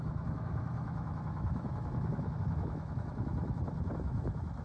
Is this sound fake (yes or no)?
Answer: yes